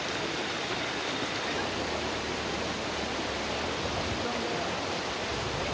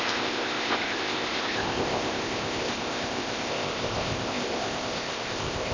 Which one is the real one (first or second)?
first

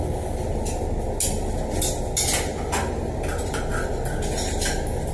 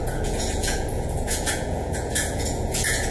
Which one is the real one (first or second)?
first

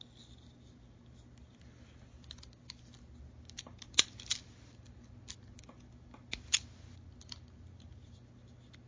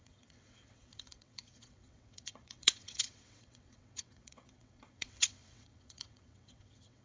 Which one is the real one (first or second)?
first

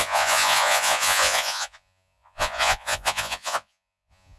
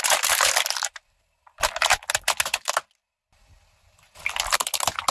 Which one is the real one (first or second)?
second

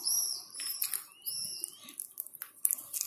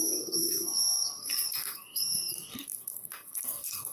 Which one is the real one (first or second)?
first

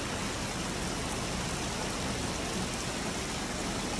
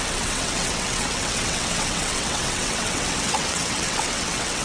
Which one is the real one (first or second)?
first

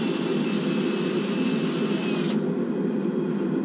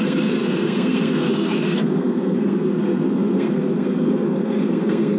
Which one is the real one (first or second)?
first